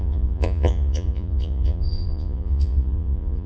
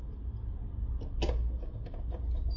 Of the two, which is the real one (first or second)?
second